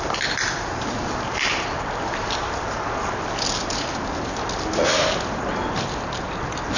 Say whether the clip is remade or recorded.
recorded